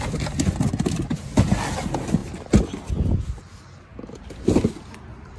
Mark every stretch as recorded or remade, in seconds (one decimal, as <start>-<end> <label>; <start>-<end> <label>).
0.0-5.4 recorded